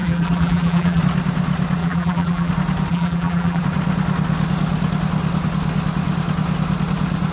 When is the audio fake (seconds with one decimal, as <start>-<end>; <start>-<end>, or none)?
0.0-1.0; 1.8-2.5; 2.9-3.6